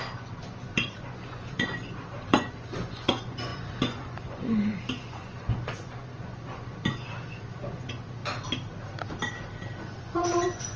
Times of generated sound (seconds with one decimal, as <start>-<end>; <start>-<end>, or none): 0.0-8.2; 9.8-10.8